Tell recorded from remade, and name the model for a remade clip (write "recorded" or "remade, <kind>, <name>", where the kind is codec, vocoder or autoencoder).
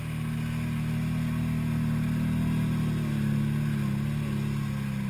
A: recorded